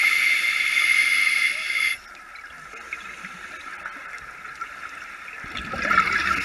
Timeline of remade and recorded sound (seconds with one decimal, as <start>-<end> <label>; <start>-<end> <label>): 0.0-6.4 recorded